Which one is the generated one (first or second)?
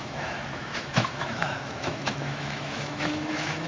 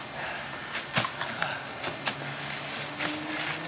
first